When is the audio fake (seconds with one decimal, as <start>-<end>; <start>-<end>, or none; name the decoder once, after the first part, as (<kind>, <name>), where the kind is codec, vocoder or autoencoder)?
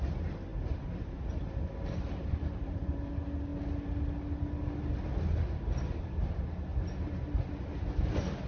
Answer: 0.5-3.0 (vocoder, BigVGAN v2)